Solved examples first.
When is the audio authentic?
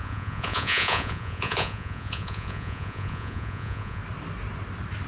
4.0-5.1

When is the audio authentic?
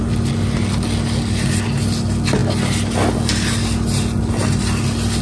0.0-5.2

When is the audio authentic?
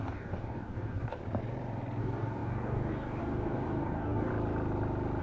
1.2-2.0; 4.3-5.2